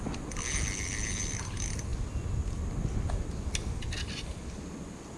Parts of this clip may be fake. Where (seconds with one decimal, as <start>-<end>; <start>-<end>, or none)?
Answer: none